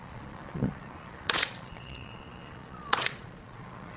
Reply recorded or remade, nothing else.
remade